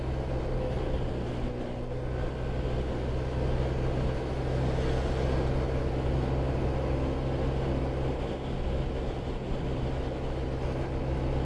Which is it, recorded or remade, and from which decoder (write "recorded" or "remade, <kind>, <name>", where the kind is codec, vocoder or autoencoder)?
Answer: recorded